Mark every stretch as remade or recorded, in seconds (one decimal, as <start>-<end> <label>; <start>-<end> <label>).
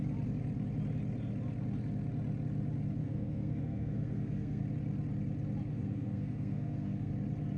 0.0-3.0 recorded; 3.0-4.6 remade; 4.6-5.7 recorded; 5.7-7.1 remade; 7.1-7.6 recorded